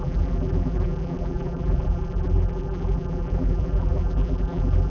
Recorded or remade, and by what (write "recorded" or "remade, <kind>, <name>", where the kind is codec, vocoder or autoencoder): remade, vocoder, BigVGAN v2